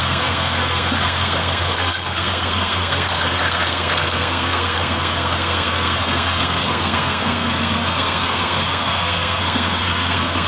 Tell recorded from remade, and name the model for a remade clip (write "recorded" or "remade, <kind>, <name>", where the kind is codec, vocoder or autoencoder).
remade, codec, SNAC